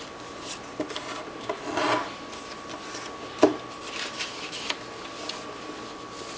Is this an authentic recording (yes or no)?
yes